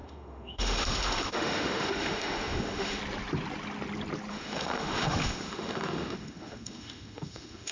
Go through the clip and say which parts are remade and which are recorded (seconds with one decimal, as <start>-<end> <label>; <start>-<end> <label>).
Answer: 0.0-3.0 remade; 3.0-4.3 recorded; 4.3-7.7 remade